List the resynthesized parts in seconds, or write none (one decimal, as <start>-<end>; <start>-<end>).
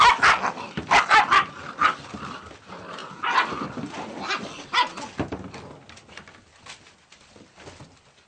none